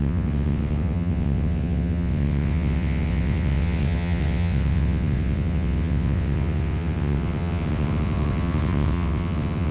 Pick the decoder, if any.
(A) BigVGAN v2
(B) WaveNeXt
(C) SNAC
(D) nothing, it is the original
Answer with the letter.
B